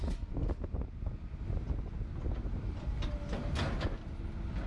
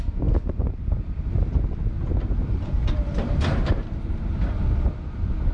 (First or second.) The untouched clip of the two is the first